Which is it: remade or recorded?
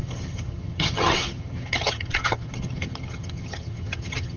remade